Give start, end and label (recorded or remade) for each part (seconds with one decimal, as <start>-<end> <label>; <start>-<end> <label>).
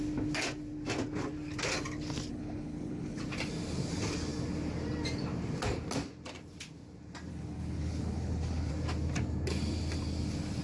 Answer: 0.0-2.3 recorded; 2.3-3.2 remade; 3.2-7.3 recorded; 7.3-8.7 remade; 8.7-10.6 recorded